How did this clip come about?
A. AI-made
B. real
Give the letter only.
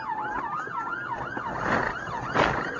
B